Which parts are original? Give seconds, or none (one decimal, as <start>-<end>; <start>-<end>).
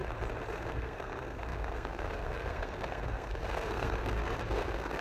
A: 0.0-0.5